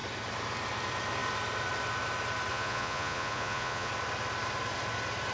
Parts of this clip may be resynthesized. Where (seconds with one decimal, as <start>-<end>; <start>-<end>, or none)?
2.5-3.9